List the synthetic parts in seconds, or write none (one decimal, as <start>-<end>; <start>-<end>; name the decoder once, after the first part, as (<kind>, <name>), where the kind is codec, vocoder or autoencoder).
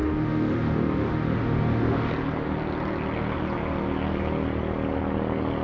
0.0-2.1 (autoencoder, DAC-VAE)